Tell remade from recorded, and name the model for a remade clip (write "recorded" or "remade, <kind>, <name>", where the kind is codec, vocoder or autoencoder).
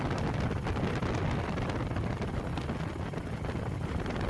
recorded